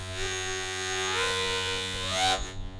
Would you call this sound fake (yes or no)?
yes